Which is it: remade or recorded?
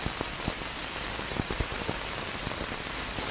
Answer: remade